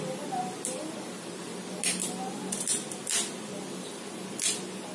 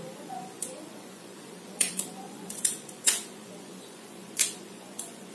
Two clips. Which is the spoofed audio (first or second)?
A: second